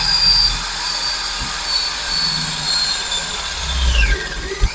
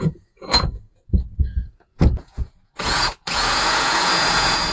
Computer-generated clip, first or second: second